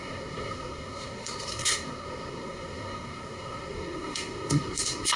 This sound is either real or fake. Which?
fake